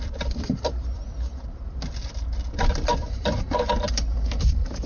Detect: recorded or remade remade